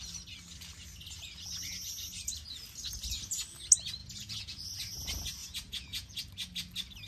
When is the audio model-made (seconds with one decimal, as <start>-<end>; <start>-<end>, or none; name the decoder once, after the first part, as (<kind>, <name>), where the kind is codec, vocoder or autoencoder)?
4.0-4.6 (vocoder, Vocos); 5.4-6.2